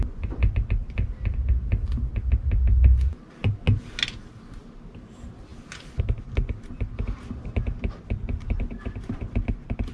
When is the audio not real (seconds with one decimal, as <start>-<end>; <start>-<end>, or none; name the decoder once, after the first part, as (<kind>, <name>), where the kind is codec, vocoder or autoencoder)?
none